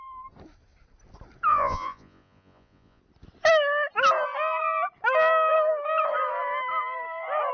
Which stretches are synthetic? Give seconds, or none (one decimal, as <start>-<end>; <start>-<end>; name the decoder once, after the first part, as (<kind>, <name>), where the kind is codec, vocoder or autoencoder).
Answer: 1.5-3.0 (vocoder, Vocos)